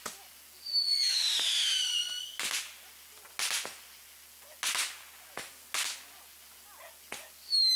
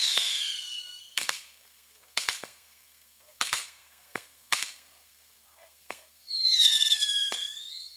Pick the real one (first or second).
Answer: first